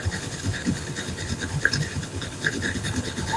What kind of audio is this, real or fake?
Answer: fake